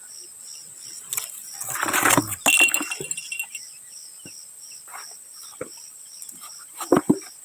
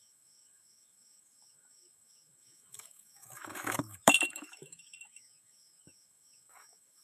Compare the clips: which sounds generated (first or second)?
second